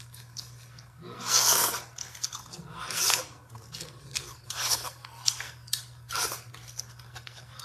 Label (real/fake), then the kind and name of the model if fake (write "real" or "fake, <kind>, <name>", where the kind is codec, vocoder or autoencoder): fake, codec, SNAC